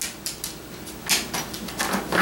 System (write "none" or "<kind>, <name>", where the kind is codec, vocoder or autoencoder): none